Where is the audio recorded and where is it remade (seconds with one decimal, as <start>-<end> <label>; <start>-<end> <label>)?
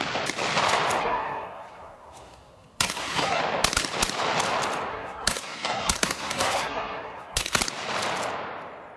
0.0-1.0 recorded; 1.0-3.4 remade; 3.4-4.9 recorded; 4.9-7.6 remade; 7.6-9.0 recorded